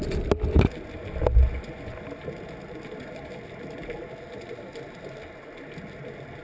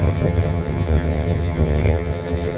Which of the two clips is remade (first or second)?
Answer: second